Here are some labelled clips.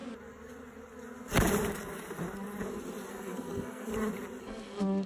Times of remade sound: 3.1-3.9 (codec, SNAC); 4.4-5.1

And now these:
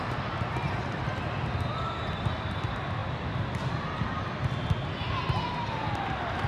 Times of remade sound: none

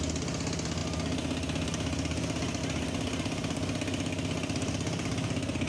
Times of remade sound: none

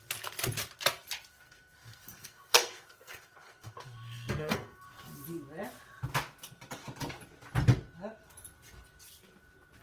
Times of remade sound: 1.3-5.0 (codec, SNAC)

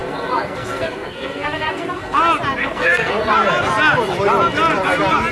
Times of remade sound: 0.0-2.2 (codec, SNAC); 2.6-3.3

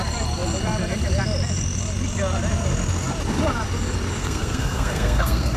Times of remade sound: 4.2-5.6 (codec, SNAC)